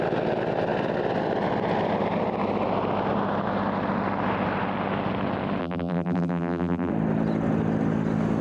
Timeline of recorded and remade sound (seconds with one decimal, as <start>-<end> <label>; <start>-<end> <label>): 0.0-5.6 recorded; 5.6-6.9 remade; 6.9-8.4 recorded